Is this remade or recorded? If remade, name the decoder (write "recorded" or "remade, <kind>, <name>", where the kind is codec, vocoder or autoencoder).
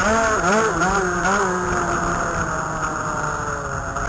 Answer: recorded